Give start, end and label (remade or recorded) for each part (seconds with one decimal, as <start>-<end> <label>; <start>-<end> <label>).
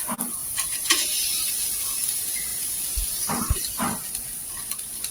0.0-0.4 recorded; 0.4-1.5 remade; 1.5-5.1 recorded